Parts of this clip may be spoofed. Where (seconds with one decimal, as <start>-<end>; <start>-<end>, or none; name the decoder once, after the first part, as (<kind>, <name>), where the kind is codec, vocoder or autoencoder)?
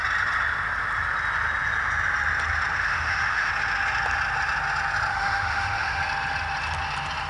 2.8-3.5 (autoencoder, DAC-VAE); 5.1-6.0